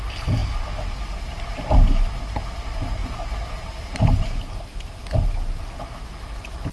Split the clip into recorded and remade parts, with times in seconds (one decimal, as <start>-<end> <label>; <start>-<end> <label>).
0.0-6.7 recorded